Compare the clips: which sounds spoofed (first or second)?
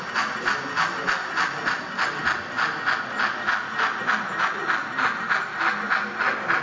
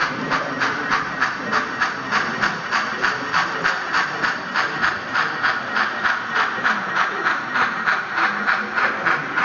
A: second